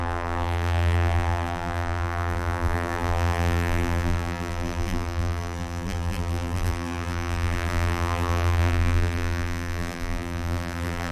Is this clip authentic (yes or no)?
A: no